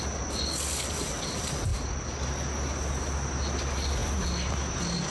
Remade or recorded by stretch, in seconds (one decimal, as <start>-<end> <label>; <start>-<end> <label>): 0.0-5.1 recorded